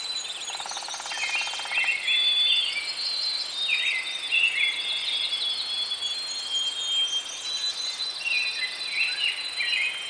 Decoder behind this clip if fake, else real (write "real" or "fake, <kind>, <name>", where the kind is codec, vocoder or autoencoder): real